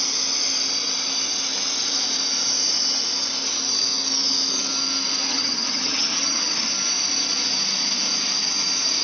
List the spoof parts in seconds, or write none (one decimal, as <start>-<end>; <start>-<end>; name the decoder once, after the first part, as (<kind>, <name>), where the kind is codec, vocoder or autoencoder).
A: 5.3-6.7 (vocoder, HiFi-GAN)